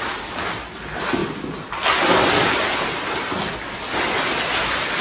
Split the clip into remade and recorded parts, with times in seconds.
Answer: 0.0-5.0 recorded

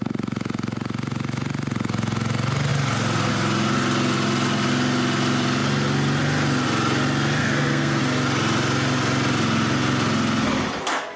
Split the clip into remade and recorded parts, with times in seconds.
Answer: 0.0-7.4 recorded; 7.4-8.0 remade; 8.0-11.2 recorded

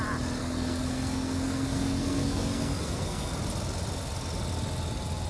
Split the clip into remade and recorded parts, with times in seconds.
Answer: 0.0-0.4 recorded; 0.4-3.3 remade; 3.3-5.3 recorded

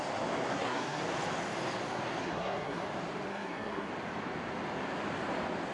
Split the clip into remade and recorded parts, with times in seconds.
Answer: 0.0-0.5 recorded; 0.5-1.0 remade; 1.0-2.2 recorded; 2.2-2.8 remade; 2.8-3.3 recorded; 3.3-3.9 remade; 3.9-5.7 recorded